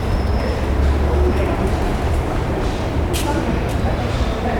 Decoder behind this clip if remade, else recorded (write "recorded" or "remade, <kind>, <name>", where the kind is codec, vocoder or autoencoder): remade, vocoder, BigVGAN v2